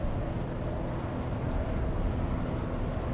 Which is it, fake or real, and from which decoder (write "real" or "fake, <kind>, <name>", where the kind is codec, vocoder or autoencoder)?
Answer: real